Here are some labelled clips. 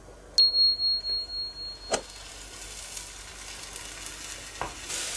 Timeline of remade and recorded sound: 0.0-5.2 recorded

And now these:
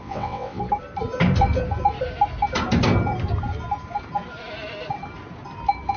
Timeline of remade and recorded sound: 0.0-0.6 remade; 0.6-6.0 recorded

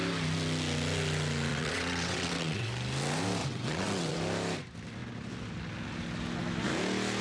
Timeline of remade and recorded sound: 0.0-1.5 recorded; 1.5-2.7 remade; 2.7-3.4 recorded; 3.4-4.2 remade; 4.2-7.2 recorded

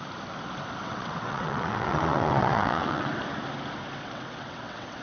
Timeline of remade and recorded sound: 0.0-0.8 recorded; 0.8-3.1 remade; 3.1-4.0 recorded; 4.0-5.0 remade

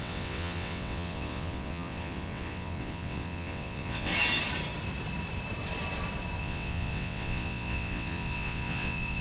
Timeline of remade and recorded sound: 0.0-4.1 remade; 4.1-6.4 recorded; 6.4-9.2 remade

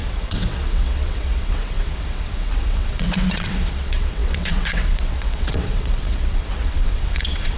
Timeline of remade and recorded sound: 0.0-7.6 remade

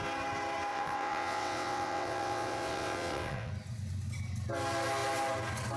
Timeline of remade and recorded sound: 0.0-0.7 recorded; 0.7-3.5 remade; 3.5-5.8 recorded